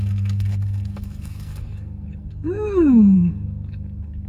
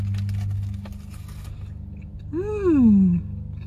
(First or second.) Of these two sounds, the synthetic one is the first